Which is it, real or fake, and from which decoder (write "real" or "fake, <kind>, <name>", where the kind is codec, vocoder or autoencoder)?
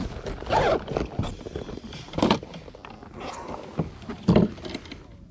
real